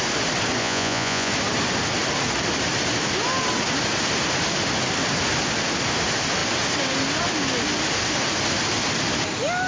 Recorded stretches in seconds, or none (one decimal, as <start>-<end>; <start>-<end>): 0.0-0.6; 1.3-9.7